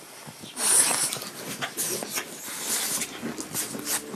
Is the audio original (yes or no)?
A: yes